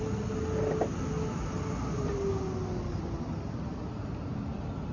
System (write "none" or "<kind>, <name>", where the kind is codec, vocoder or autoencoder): none